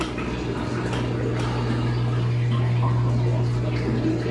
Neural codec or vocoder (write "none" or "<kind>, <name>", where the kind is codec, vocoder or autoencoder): none